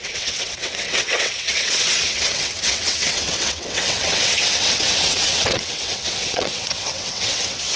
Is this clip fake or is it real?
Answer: fake